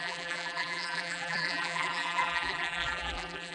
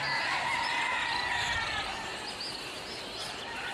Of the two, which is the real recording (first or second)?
second